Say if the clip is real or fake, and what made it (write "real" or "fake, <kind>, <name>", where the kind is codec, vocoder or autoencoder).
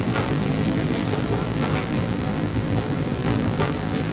fake, vocoder, BigVGAN v2